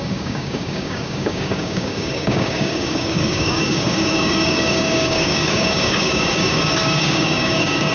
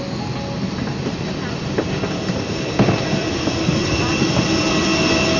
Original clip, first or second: second